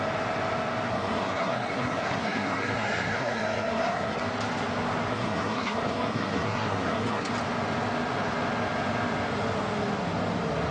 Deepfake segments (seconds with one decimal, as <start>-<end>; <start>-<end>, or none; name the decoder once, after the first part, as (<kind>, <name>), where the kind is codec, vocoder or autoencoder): 0.9-4.2 (codec, SNAC); 5.1-7.3